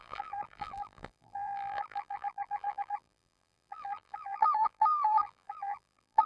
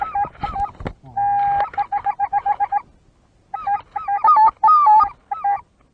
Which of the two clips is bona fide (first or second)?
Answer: second